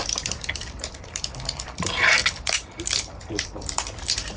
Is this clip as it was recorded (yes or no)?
no